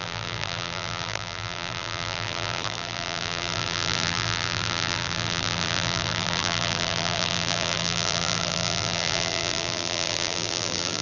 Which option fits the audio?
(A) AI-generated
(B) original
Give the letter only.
A